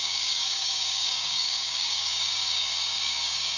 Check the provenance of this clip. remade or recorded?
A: remade